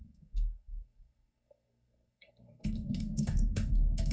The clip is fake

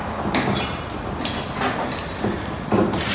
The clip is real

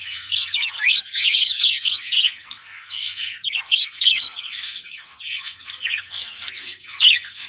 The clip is fake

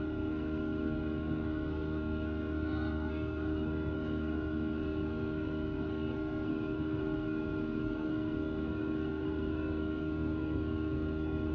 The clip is fake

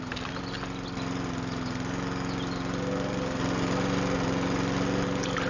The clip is real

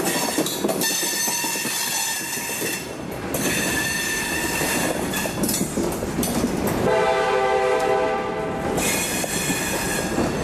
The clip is real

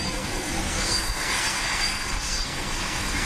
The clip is fake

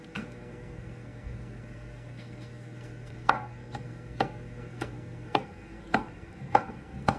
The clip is fake